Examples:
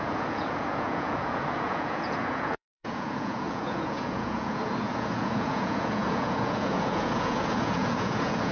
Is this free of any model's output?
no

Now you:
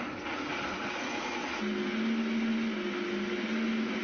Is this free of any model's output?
yes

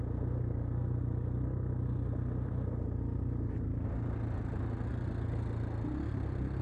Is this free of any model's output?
yes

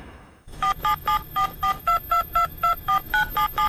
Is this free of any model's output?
no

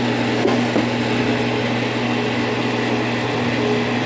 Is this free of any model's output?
yes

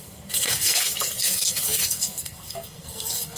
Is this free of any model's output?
no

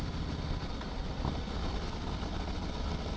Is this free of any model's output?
yes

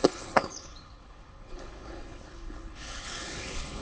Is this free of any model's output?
no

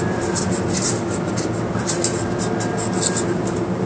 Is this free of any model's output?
yes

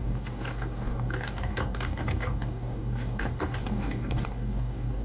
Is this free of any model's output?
no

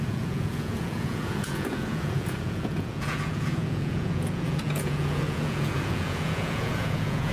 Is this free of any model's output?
no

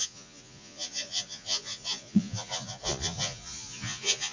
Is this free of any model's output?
no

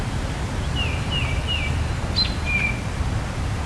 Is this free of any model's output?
no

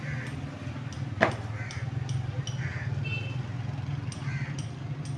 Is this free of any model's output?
yes